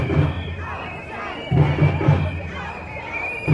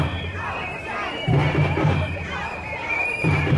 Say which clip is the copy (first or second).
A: second